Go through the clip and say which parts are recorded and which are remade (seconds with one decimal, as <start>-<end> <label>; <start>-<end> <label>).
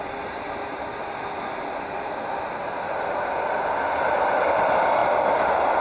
0.0-5.8 recorded